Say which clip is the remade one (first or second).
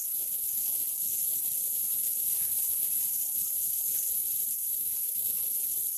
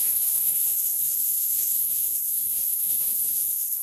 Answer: second